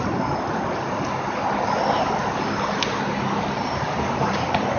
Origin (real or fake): real